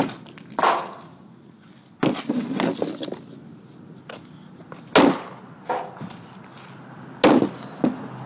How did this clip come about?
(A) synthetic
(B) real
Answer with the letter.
B